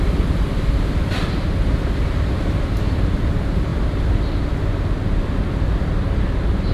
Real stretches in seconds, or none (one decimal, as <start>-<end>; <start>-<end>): 0.0-6.7